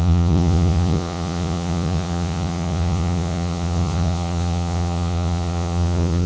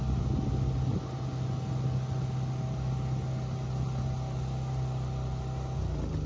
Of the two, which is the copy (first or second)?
first